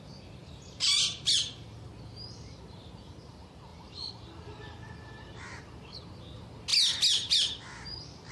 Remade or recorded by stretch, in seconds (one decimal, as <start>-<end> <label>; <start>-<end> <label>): 0.0-0.4 recorded; 0.4-1.9 remade; 1.9-3.7 recorded; 3.7-5.6 remade; 5.6-8.3 recorded